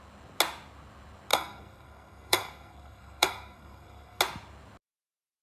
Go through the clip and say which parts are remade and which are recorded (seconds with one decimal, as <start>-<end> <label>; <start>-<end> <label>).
0.0-1.3 recorded; 1.3-4.2 remade; 4.2-5.4 recorded